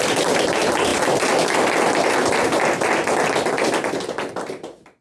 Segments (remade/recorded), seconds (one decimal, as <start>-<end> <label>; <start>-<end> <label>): 0.0-5.0 recorded